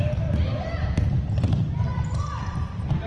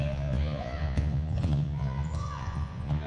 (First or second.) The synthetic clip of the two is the second